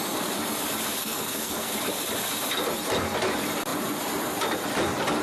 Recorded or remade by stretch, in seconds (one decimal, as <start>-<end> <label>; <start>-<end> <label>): 0.0-1.0 recorded; 1.0-1.7 remade; 1.7-5.2 recorded